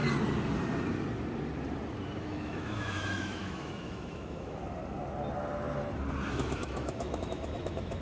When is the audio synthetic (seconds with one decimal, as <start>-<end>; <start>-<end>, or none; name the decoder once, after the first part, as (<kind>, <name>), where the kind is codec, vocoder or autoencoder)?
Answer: 2.2-4.6 (autoencoder, DAC-VAE); 6.3-8.0